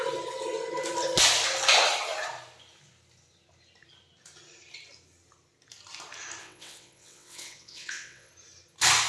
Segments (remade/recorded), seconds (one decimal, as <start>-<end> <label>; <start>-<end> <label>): 0.0-6.4 recorded; 6.4-8.3 remade; 8.3-9.1 recorded